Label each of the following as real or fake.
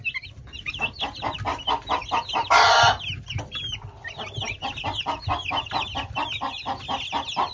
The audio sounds real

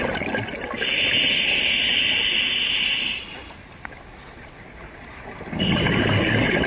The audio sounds real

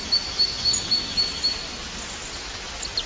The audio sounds real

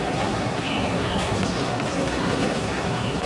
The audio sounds fake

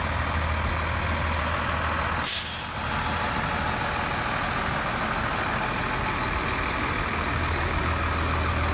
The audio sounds real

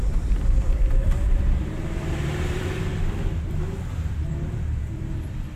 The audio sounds fake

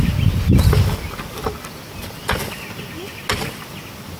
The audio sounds real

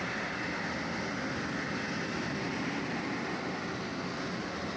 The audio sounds real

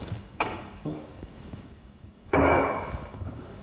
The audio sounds fake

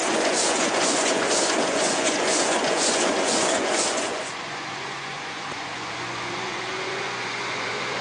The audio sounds fake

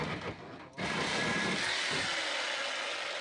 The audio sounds real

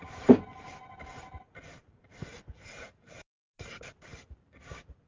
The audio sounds fake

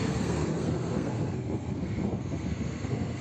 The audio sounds fake